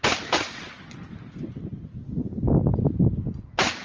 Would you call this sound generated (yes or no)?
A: no